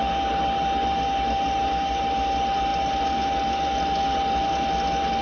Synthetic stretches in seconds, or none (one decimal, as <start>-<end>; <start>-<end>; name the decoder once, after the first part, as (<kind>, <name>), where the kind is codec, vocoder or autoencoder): none

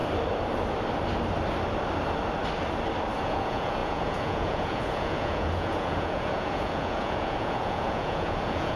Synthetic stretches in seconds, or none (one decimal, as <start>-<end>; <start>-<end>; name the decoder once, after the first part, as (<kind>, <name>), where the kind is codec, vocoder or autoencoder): 3.2-8.8 (vocoder, Vocos)

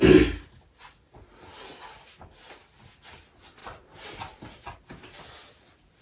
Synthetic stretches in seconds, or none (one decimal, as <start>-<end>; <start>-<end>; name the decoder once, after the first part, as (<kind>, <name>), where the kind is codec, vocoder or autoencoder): none

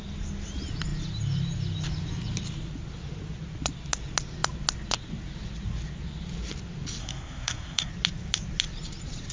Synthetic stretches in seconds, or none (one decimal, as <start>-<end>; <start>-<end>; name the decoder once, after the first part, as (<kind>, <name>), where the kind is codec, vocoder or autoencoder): 7.0-7.9 (codec, SNAC)

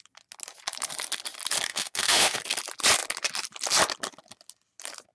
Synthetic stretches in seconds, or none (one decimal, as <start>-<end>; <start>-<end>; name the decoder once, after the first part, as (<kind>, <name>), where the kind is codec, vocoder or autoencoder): 1.7-2.4 (autoencoder, DAC-VAE)

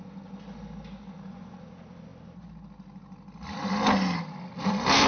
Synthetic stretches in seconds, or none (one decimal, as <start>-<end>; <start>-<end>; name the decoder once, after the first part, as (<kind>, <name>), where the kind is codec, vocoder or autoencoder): none